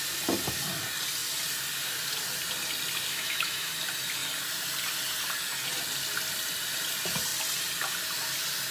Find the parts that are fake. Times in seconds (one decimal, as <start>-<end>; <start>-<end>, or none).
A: 3.1-3.7